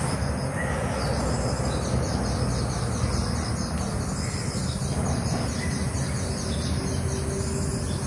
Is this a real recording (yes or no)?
yes